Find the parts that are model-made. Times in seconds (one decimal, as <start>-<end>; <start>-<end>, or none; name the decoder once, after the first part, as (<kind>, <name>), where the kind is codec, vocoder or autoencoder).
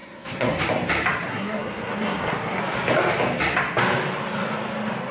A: 0.0-0.6 (codec, SNAC); 1.3-2.6